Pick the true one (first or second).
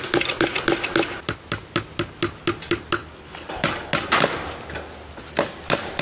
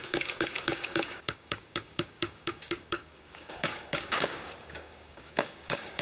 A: first